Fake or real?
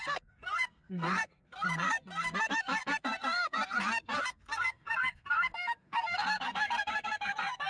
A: fake